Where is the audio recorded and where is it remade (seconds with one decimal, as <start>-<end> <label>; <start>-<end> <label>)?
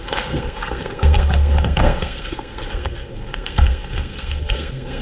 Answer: 0.0-5.0 remade